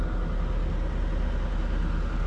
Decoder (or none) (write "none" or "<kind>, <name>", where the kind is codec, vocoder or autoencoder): none